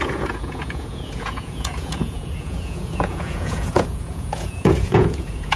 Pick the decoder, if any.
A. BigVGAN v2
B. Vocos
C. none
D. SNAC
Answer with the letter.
B